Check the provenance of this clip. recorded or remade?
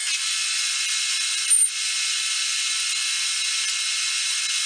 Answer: recorded